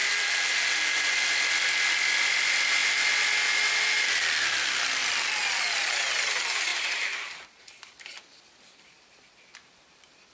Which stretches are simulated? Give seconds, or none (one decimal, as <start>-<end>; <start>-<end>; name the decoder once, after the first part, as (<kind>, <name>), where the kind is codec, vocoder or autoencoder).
1.9-5.0 (vocoder, BigVGAN v2); 6.1-6.7; 8.1-10.3